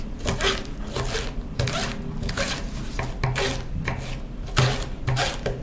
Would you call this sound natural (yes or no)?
yes